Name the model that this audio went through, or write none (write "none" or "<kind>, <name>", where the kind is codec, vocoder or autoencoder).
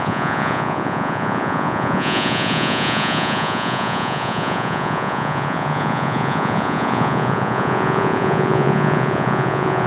vocoder, Vocos